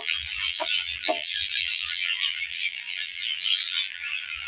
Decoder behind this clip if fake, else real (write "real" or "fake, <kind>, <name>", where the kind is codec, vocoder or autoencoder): fake, vocoder, BigVGAN v2